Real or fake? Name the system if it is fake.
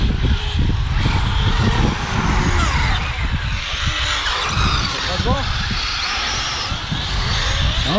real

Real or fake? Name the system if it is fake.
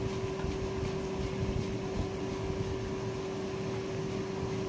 real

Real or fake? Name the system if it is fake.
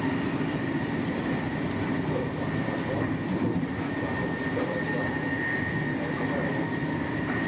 fake, vocoder, BigVGAN v2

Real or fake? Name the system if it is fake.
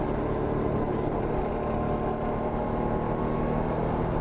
real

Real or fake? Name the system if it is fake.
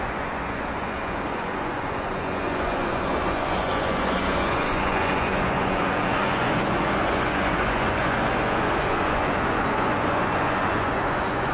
fake, vocoder, Vocos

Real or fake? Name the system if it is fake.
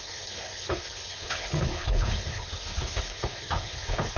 fake, codec, HILCodec